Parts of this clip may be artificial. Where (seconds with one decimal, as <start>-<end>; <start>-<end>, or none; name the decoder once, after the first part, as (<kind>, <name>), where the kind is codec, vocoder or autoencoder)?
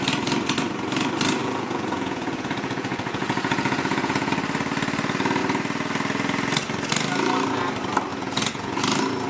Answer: 1.4-4.3 (vocoder, Vocos); 8.1-8.8